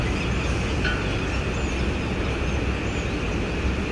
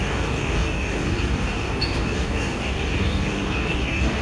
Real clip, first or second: first